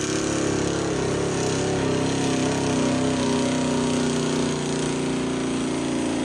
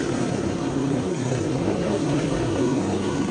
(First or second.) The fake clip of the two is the second